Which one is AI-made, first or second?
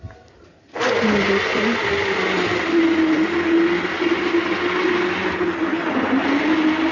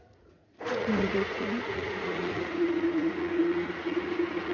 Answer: second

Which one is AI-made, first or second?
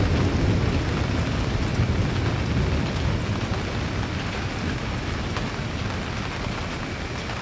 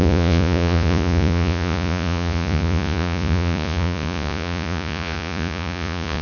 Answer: second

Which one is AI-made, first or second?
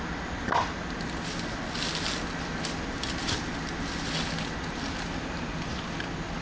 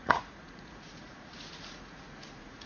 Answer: second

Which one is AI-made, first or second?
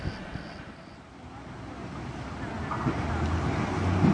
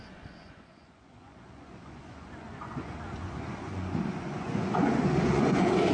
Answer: second